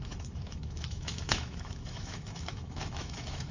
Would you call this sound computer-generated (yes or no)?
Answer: yes